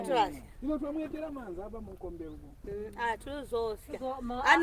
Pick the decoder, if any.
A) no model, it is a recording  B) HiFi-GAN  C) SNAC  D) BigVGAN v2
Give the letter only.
A